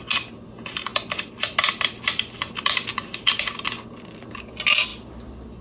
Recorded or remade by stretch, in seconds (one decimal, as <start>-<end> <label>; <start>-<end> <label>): 0.0-5.6 recorded